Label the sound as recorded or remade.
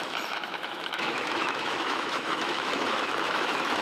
remade